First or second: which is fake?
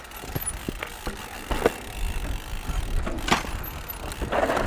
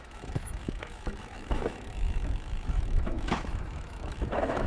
second